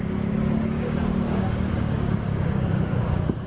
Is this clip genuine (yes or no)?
no